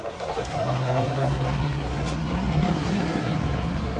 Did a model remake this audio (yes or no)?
yes